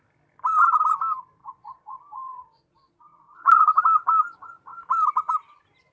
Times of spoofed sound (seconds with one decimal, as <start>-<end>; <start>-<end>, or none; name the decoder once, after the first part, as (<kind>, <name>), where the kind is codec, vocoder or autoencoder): 1.4-3.8 (vocoder, Vocos)